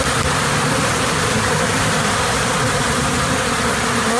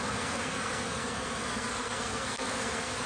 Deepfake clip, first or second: second